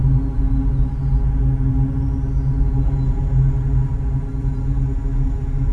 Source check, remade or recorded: recorded